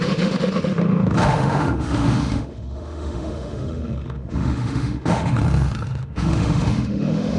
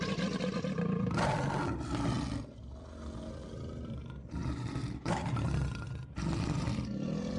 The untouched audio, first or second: second